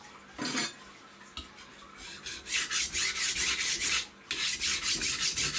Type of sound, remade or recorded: recorded